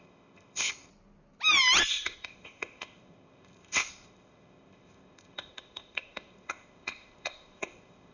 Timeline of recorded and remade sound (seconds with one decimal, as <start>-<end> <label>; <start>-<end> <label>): 0.0-0.9 remade; 0.9-1.9 recorded; 1.9-8.1 remade